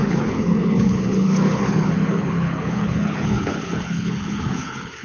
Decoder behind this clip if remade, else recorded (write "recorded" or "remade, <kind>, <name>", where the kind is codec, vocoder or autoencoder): remade, codec, HILCodec